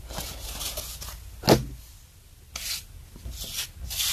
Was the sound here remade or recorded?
recorded